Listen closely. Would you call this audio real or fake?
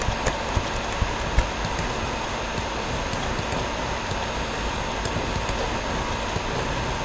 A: real